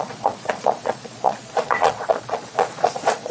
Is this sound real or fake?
fake